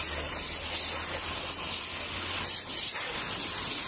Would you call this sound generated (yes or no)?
no